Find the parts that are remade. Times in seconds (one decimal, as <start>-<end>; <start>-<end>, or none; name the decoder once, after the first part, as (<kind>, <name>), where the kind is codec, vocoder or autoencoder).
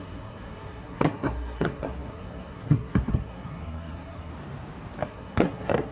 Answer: 0.0-4.3 (codec, SNAC); 5.0-5.9